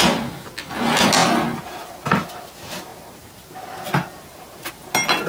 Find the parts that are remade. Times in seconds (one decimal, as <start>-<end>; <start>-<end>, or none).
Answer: none